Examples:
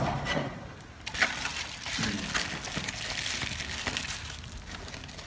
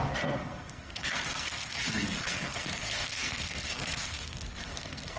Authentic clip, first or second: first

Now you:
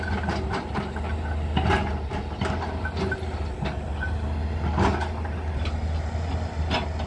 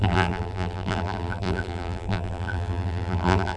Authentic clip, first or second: first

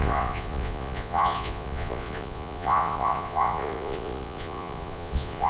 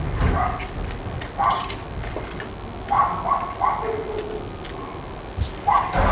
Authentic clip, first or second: second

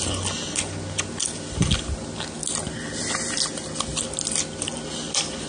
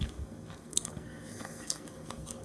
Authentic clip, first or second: first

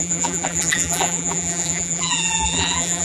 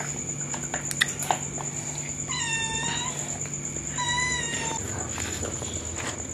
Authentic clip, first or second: second